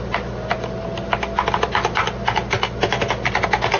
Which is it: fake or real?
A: real